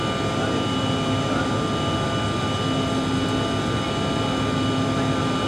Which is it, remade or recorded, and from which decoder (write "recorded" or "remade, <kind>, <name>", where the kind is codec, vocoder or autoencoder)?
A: recorded